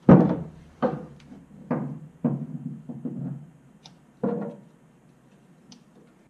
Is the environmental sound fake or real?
fake